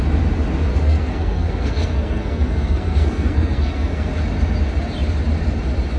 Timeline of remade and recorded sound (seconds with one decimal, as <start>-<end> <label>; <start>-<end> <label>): 0.0-0.7 recorded; 0.7-4.1 remade; 4.1-6.0 recorded